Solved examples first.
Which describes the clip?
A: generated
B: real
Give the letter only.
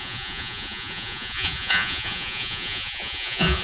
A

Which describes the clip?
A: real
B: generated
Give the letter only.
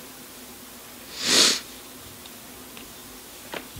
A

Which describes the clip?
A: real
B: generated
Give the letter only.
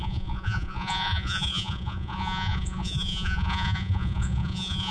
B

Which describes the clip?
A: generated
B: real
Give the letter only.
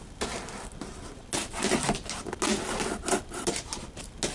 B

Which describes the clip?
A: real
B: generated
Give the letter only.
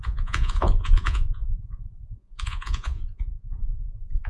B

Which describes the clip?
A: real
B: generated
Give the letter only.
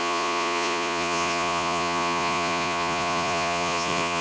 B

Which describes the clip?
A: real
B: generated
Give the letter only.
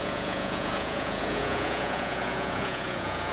B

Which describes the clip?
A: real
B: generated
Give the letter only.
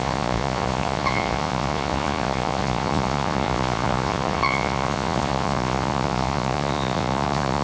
B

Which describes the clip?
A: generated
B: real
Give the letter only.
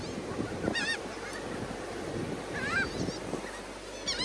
B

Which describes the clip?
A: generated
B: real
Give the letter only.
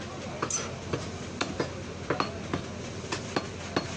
B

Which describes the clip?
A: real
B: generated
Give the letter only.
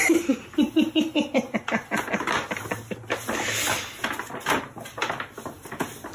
A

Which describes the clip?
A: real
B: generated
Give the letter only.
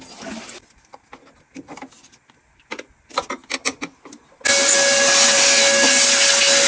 A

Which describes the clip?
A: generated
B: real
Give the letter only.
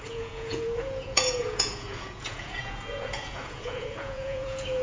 A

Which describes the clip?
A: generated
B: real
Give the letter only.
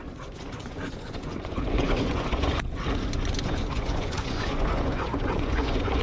A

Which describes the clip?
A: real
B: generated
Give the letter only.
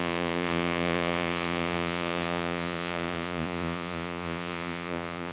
B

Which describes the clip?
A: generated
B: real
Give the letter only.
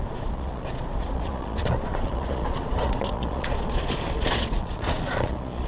A